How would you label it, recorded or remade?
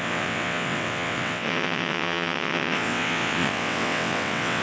remade